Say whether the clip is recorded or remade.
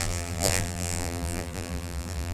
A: remade